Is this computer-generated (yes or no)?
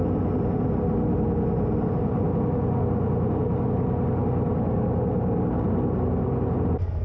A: no